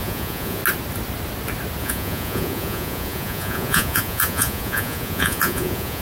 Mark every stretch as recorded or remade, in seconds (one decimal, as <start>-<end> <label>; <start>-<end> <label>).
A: 0.0-0.6 remade; 0.6-1.8 recorded; 1.8-6.0 remade